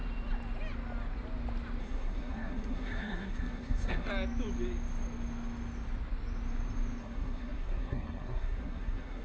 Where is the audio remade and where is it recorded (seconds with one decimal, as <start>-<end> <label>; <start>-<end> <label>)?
0.0-1.8 recorded; 1.8-4.1 remade; 4.1-7.0 recorded; 7.0-9.2 remade